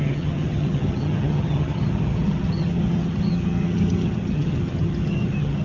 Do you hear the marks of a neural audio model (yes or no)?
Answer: yes